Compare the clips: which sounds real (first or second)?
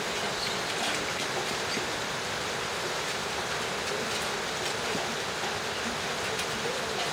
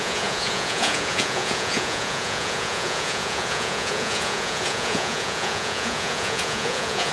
first